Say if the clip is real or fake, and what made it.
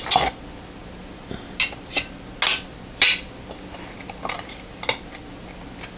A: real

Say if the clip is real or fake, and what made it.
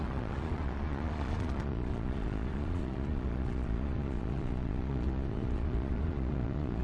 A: fake, vocoder, Vocos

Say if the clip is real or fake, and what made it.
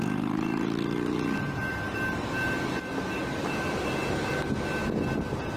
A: real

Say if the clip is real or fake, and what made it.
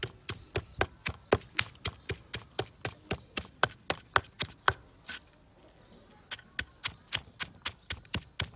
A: real